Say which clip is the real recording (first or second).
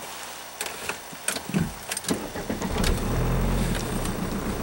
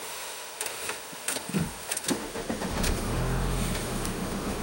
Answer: first